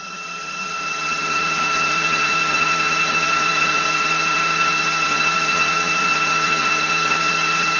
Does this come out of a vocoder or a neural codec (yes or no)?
yes